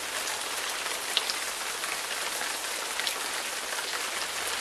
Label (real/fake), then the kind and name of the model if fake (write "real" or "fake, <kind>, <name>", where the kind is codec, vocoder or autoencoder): real